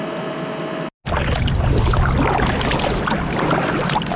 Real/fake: real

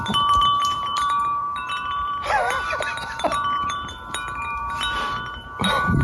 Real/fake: fake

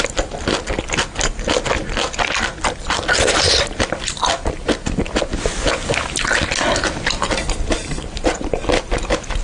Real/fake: real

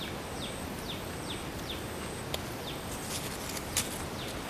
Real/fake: real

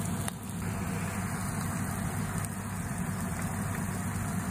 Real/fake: real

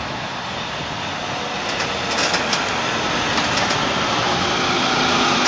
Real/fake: real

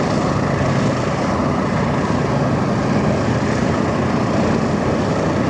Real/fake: real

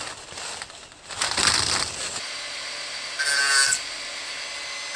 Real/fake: real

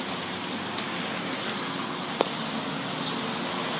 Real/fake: real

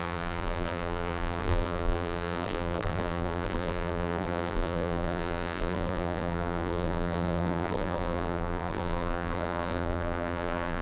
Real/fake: fake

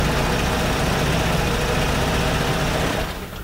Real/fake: real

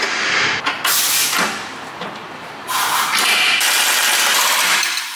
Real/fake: real